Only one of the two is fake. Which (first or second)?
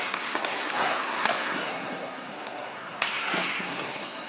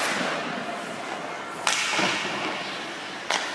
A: first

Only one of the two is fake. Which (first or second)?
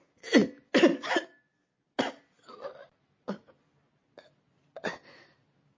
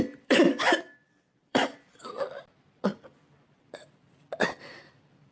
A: second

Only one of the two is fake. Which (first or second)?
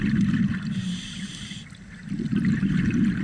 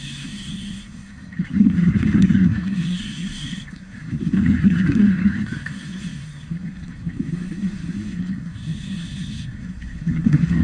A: second